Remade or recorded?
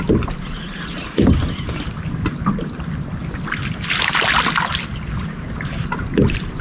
recorded